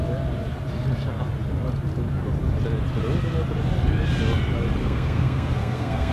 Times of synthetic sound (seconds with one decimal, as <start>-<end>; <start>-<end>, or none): 4.8-6.1